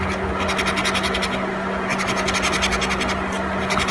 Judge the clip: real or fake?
real